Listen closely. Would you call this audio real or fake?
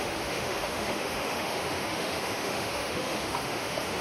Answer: fake